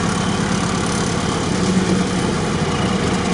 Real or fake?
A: real